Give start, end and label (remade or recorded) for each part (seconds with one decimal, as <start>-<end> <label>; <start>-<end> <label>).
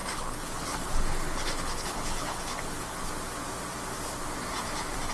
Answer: 0.0-3.1 remade; 3.1-5.1 recorded